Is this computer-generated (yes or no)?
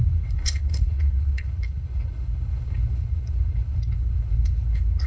yes